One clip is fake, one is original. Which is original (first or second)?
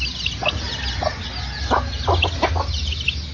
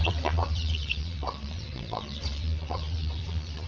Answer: first